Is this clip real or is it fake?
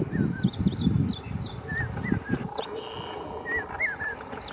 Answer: real